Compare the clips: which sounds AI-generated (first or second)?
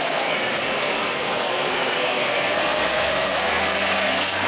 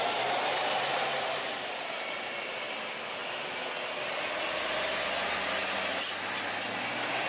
first